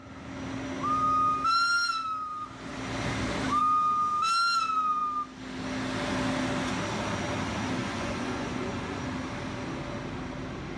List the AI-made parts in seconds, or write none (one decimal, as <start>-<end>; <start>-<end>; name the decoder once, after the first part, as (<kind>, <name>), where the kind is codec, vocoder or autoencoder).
7.8-9.0 (vocoder, Vocos)

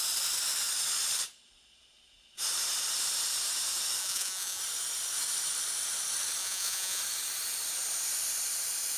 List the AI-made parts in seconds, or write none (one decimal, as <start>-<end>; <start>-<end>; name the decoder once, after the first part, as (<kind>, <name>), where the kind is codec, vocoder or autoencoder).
4.0-4.6 (vocoder, Vocos); 6.4-7.0

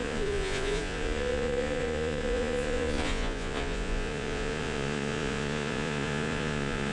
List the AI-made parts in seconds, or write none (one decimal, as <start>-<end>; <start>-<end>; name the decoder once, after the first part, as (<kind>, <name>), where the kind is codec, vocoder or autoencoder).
0.0-6.9 (vocoder, Vocos)

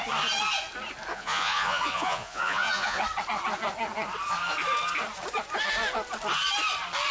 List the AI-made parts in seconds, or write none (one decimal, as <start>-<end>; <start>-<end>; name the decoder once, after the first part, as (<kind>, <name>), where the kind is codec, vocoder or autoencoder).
1.1-3.0 (vocoder, Vocos)